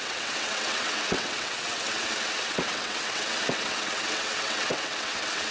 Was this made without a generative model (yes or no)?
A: no